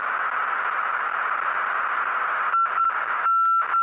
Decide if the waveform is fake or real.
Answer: real